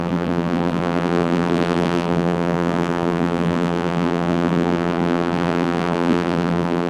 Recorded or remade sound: remade